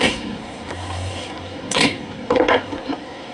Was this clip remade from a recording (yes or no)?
yes